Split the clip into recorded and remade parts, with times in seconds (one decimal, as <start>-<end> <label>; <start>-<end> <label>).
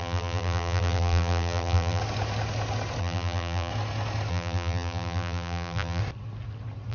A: 0.0-2.0 remade; 2.0-3.0 recorded; 3.0-3.7 remade; 3.7-4.3 recorded; 4.3-6.0 remade; 6.0-6.9 recorded